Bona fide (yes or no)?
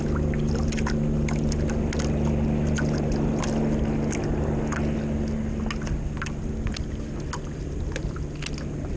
yes